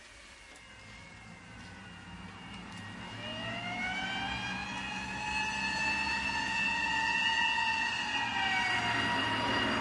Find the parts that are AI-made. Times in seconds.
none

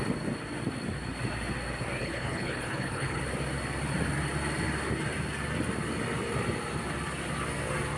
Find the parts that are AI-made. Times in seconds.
2.0-3.2 (codec, HILCodec)

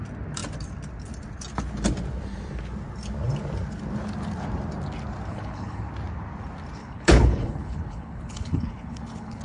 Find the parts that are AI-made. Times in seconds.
5.3-5.8 (codec, HILCodec); 6.8-9.4

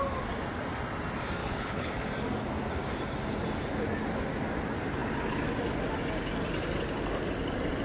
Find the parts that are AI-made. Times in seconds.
1.4-1.9 (codec, HILCodec)